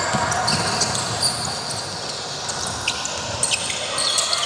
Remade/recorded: recorded